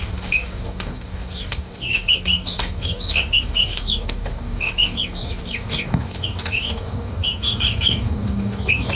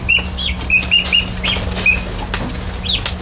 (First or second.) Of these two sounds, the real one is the second